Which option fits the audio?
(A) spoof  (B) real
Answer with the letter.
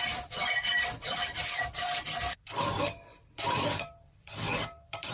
A